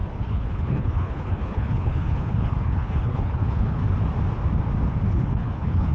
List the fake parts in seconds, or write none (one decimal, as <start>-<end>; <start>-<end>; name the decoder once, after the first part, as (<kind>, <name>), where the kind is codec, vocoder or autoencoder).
0.0-3.8 (codec, HILCodec); 5.1-5.9